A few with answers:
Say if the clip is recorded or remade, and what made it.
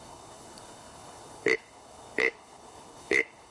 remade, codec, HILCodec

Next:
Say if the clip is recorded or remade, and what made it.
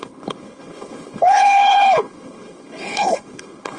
remade, codec, HILCodec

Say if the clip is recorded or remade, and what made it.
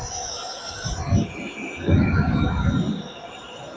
recorded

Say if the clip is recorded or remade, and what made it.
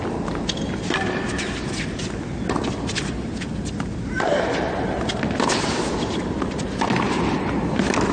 recorded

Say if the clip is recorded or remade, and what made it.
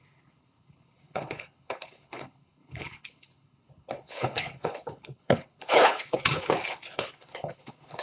remade, codec, HILCodec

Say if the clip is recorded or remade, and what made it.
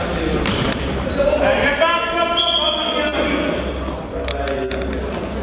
recorded